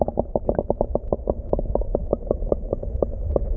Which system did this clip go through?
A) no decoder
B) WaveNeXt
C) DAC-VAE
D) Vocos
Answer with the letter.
A